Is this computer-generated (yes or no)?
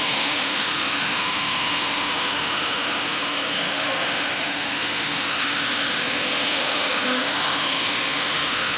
yes